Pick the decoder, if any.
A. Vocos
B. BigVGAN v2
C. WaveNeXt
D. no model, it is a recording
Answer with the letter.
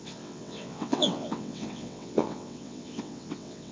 C